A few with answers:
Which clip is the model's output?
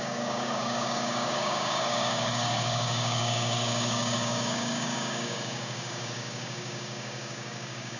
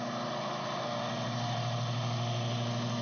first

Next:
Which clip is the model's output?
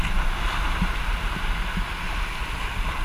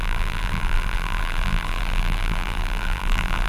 second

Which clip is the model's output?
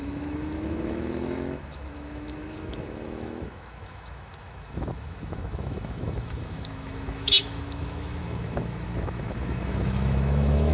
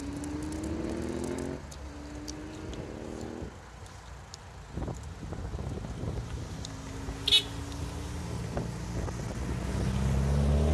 first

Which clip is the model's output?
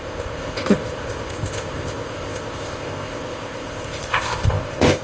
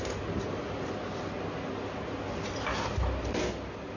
first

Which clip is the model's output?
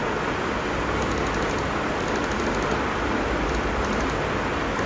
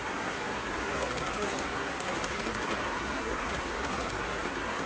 second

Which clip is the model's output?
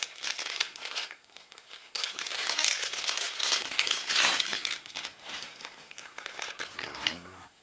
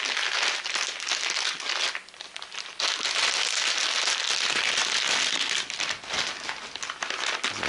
first